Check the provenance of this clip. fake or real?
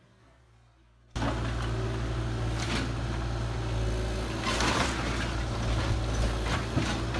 real